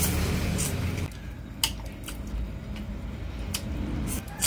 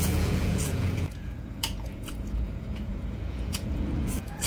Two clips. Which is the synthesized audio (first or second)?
second